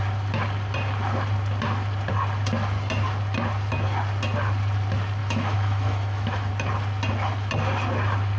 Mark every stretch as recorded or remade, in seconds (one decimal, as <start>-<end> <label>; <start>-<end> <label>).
0.0-5.2 recorded; 5.2-6.5 remade; 6.5-8.4 recorded